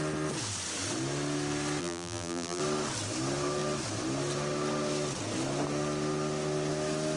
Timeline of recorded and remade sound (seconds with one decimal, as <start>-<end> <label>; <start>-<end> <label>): 0.0-1.8 recorded; 1.8-2.6 remade; 2.6-7.2 recorded